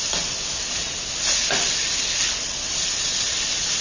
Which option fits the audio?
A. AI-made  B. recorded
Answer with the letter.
B